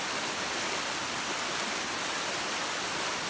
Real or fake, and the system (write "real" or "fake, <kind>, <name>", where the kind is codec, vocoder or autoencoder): real